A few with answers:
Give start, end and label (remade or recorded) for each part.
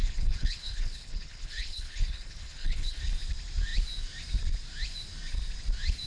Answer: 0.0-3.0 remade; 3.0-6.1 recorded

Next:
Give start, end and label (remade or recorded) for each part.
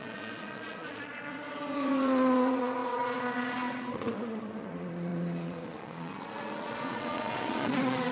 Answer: 0.0-8.1 remade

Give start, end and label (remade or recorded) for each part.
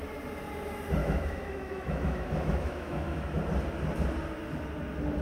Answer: 0.0-1.0 recorded; 1.0-3.4 remade; 3.4-5.2 recorded